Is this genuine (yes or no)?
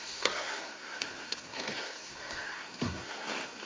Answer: no